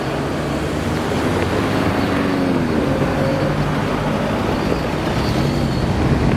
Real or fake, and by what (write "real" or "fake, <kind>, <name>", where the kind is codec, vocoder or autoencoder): real